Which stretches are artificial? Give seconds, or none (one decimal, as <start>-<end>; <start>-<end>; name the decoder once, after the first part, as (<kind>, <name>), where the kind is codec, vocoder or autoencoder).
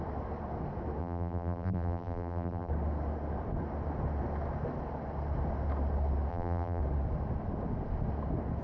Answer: 1.0-2.7 (vocoder, BigVGAN v2); 6.3-6.8